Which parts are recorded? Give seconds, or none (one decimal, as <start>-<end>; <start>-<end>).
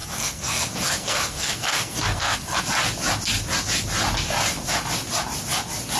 2.6-6.0